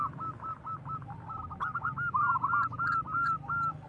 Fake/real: real